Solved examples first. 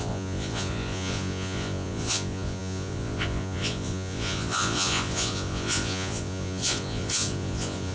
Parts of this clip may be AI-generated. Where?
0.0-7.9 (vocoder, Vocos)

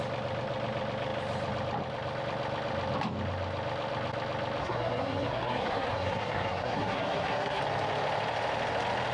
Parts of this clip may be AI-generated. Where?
4.6-7.6 (codec, SNAC)

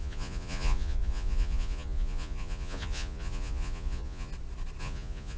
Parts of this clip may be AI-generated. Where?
0.0-4.3 (vocoder, Vocos); 4.8-5.4